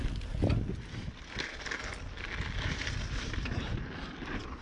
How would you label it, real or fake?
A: real